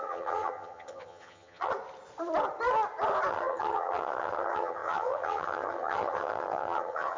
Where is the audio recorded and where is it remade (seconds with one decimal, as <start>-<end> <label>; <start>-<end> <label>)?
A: 0.0-1.7 remade; 1.7-3.3 recorded; 3.3-7.2 remade